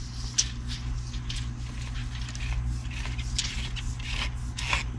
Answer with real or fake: real